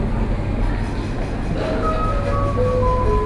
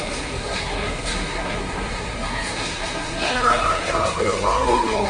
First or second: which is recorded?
first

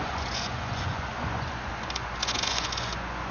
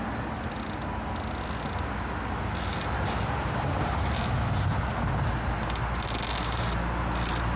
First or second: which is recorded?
second